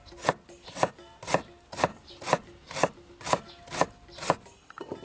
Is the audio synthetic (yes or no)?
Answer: no